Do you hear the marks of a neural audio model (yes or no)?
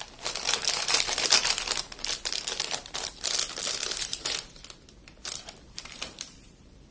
yes